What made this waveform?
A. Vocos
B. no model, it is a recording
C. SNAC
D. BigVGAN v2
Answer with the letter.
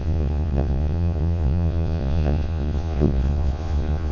A